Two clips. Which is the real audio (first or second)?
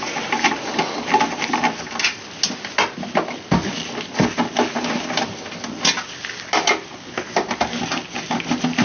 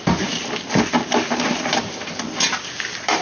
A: first